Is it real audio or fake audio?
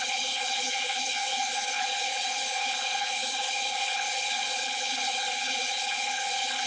fake